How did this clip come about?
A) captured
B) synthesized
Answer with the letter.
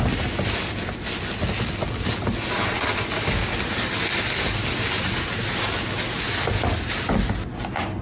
A